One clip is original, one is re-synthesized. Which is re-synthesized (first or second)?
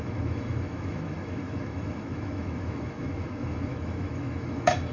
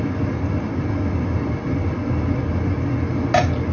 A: first